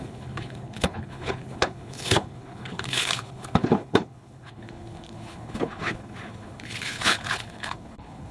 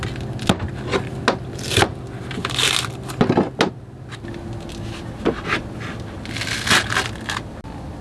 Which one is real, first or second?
second